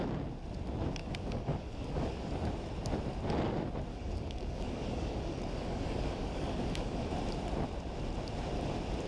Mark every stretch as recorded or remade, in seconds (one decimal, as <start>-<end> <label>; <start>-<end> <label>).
0.0-1.0 recorded; 1.0-2.3 remade; 2.3-3.9 recorded; 3.9-7.0 remade; 7.0-9.1 recorded